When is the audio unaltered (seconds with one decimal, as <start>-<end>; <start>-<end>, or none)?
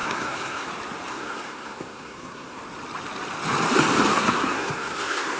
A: 0.7-1.1; 2.6-4.1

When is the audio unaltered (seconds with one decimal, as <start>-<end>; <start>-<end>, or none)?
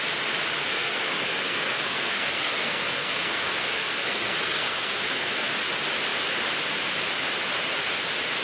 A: 0.0-0.6; 5.6-8.4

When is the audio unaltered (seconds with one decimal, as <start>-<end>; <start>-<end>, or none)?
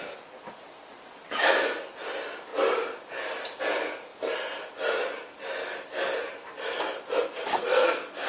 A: 0.0-7.5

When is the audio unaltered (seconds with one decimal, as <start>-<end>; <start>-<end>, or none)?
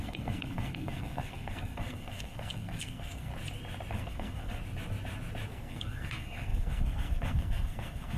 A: 3.3-3.9; 4.6-5.5